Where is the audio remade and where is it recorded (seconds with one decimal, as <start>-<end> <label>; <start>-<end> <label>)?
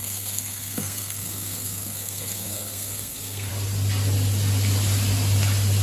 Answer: 0.0-3.5 remade; 3.5-5.8 recorded